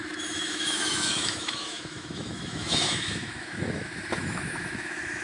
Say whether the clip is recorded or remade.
remade